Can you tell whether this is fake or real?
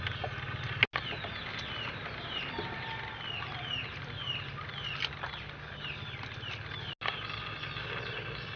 real